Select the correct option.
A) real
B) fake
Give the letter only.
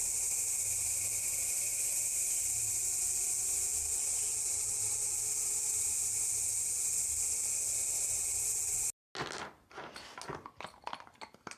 A